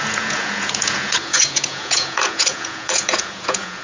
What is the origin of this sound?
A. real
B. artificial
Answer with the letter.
B